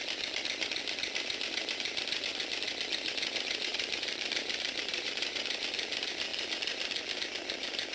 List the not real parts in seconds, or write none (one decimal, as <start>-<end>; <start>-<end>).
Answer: 3.7-5.4